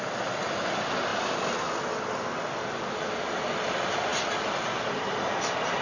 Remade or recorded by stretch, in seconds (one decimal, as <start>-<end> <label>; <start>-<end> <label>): 0.0-5.8 recorded